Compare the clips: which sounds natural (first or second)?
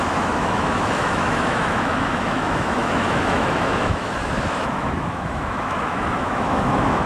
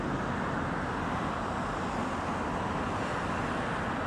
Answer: second